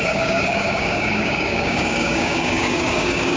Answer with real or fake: fake